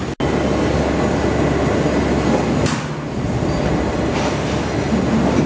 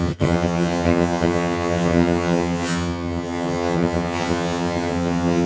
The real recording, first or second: first